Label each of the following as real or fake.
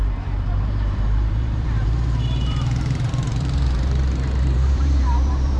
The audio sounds fake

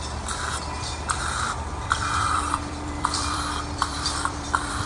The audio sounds fake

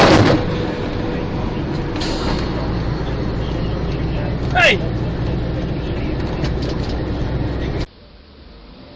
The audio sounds real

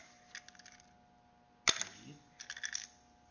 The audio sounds real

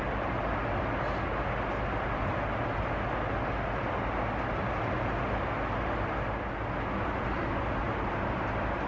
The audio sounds real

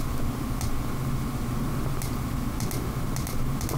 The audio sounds real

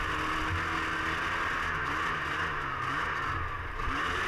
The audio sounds real